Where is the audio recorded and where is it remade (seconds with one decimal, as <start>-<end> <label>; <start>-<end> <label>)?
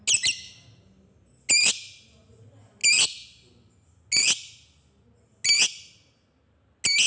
0.0-7.1 recorded